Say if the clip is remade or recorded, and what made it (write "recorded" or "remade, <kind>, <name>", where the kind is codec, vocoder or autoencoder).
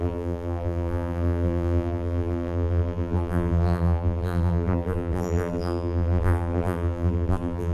remade, vocoder, BigVGAN v2